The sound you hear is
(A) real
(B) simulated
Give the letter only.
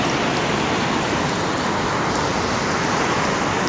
A